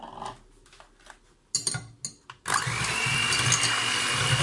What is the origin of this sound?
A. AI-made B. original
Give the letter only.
B